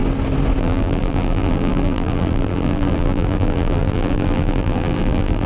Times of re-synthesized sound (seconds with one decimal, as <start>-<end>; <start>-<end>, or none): 0.6-5.5